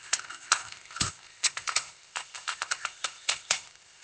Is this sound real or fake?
fake